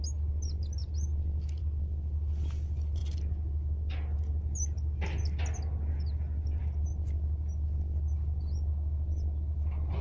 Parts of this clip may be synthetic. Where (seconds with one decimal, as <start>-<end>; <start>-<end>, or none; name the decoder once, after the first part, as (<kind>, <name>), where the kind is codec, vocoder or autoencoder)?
none